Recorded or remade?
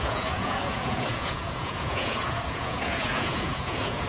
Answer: remade